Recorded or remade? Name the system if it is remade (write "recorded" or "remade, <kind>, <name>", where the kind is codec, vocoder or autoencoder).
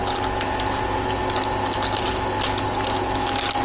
recorded